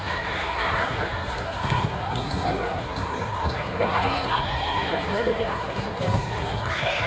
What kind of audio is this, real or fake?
fake